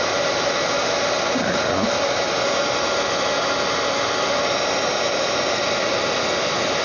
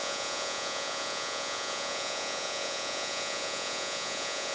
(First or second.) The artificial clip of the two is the second